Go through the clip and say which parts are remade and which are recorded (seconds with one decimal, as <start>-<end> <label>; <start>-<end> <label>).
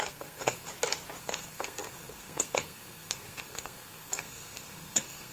0.0-0.7 remade; 0.7-1.2 recorded; 1.2-5.3 remade